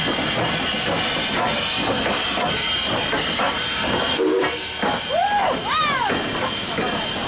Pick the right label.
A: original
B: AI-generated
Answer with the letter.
A